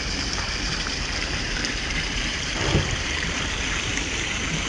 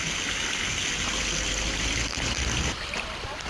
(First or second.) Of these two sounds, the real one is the second